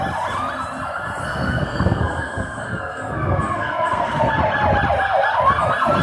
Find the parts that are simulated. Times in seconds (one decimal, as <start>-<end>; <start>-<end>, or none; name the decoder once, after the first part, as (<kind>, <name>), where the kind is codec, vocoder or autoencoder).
1.2-4.2 (codec, SNAC)